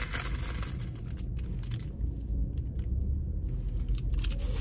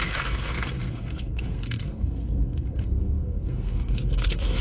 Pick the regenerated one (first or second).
second